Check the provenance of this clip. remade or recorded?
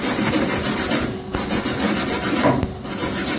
recorded